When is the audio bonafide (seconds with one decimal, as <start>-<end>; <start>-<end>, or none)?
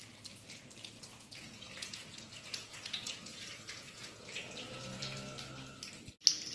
0.0-1.1; 5.0-6.5